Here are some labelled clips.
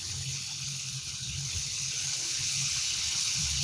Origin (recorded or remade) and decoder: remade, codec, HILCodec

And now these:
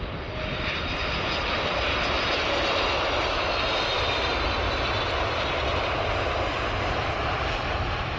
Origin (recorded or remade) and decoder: recorded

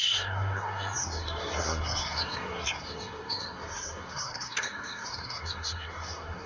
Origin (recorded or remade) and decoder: remade, codec, SNAC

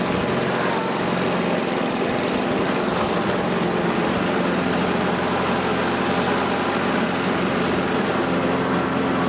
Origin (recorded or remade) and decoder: recorded